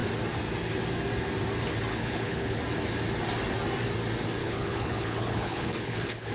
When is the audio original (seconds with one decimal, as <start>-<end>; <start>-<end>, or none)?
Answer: 0.0-1.9; 2.6-4.4

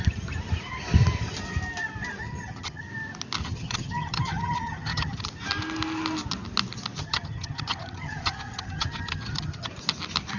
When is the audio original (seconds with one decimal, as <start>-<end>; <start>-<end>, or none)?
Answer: 0.0-2.2; 2.9-3.4; 5.2-7.0; 9.7-10.4

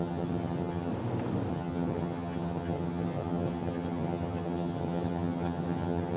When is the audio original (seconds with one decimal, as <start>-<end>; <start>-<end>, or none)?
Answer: 0.9-1.5

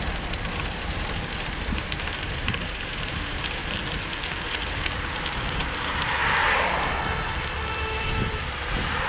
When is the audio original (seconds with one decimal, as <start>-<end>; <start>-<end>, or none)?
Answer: 3.6-4.4; 6.2-8.0

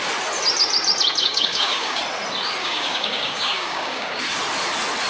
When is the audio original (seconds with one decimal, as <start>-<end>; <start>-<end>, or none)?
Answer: 0.0-1.2; 2.0-2.6; 4.2-5.1